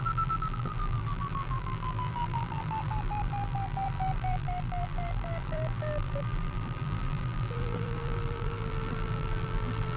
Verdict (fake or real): fake